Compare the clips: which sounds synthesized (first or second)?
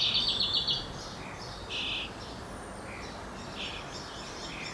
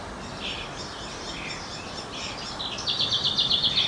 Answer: second